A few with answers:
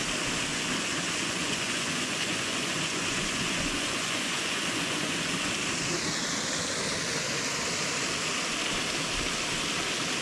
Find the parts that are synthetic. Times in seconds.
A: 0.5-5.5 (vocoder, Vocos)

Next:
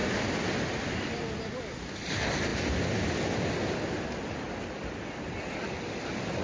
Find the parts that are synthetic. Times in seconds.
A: none